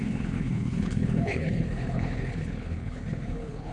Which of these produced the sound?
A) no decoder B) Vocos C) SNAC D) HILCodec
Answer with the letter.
D